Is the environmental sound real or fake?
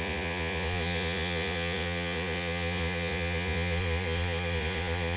fake